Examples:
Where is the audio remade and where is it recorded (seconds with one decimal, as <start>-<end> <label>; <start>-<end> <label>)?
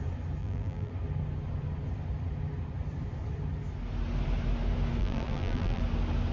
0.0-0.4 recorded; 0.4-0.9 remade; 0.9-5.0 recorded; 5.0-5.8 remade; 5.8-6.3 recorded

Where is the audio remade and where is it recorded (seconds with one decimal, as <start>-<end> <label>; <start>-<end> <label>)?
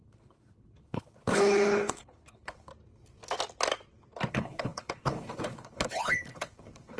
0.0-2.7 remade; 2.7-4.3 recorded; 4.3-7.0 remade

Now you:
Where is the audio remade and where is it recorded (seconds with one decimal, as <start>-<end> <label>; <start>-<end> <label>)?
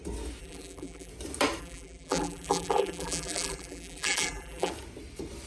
0.0-0.4 recorded; 0.4-1.1 remade; 1.1-1.6 recorded; 1.6-4.7 remade; 4.7-5.5 recorded